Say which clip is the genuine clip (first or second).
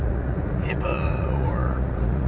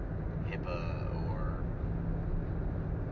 second